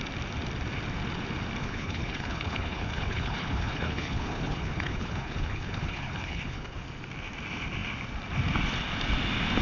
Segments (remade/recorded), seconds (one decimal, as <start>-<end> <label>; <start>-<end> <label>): 0.0-1.6 recorded; 1.6-6.8 remade; 6.8-9.6 recorded